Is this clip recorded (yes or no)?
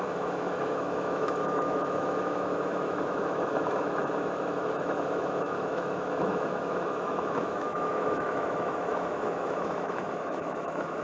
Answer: no